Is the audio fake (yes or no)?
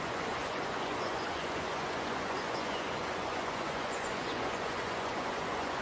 yes